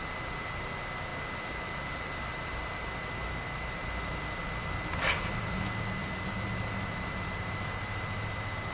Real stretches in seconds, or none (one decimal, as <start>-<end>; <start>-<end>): 0.0-8.7